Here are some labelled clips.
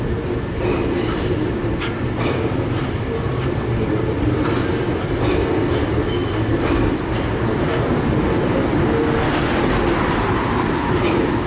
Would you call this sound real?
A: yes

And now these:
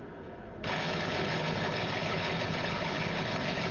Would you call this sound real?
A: no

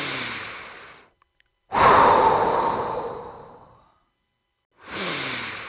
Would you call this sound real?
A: yes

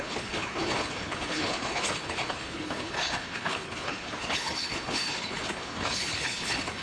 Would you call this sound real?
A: no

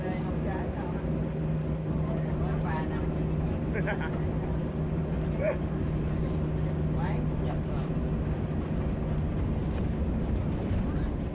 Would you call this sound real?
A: yes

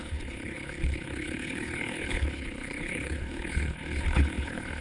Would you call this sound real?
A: no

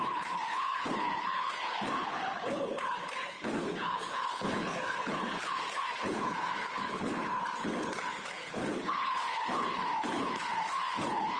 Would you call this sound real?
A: no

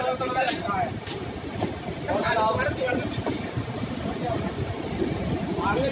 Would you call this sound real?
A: yes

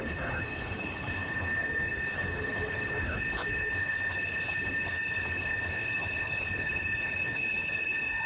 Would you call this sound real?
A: no